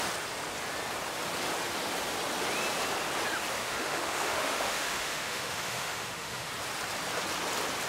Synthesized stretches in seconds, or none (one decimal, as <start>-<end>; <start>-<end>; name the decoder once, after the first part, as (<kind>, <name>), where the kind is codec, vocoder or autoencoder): 3.6-6.5 (autoencoder, DAC-VAE)